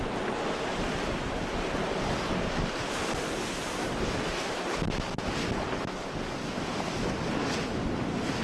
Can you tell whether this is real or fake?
real